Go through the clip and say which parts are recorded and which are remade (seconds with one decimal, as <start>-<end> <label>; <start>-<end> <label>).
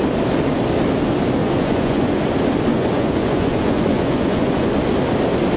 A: 0.0-1.4 recorded; 1.4-2.2 remade; 2.2-2.7 recorded; 2.7-4.7 remade; 4.7-5.6 recorded